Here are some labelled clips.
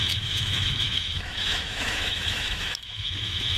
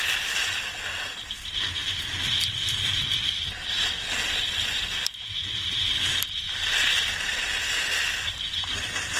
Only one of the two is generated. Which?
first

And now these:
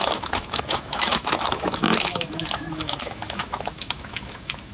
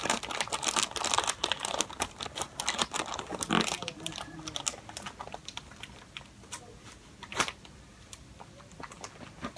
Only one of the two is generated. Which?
first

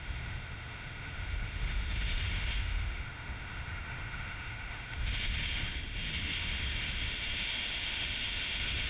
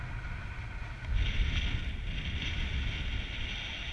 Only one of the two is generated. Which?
first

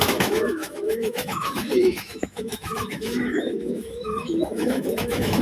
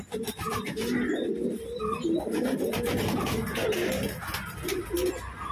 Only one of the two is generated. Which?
first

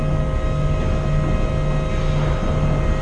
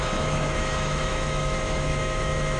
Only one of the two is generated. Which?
second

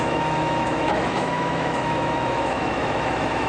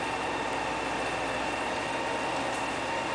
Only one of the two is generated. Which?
first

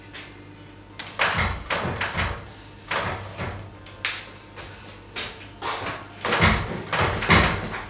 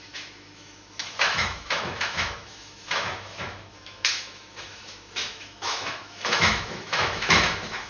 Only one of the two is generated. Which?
second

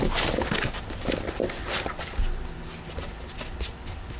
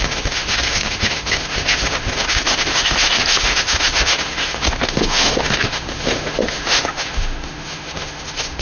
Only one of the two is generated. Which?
second